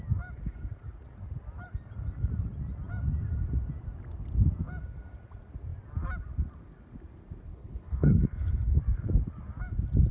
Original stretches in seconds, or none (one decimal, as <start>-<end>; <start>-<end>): 0.0-7.5; 8.8-10.1